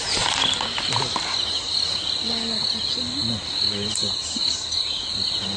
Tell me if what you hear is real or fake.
real